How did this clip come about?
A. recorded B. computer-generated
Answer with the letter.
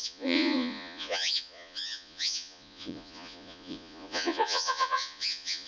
B